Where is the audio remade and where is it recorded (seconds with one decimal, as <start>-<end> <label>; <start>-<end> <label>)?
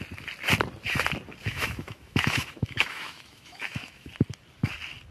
0.0-1.4 recorded; 1.4-4.1 remade; 4.1-5.1 recorded